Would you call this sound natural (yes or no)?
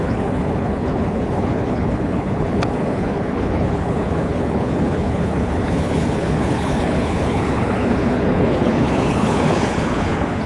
no